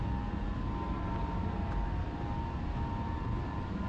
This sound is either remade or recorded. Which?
recorded